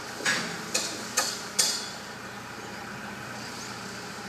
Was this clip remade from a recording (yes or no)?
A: no